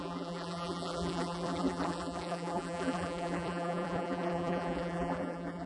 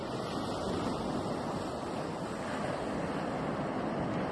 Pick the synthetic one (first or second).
first